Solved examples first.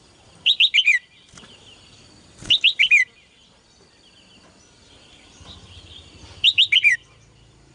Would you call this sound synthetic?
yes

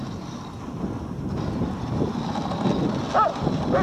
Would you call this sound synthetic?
no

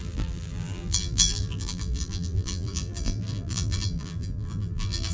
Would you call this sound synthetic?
yes